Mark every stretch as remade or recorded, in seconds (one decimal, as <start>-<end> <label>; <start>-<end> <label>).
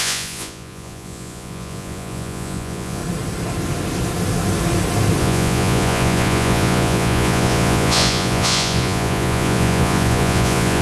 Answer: 0.0-3.0 remade; 3.0-5.2 recorded; 5.2-10.8 remade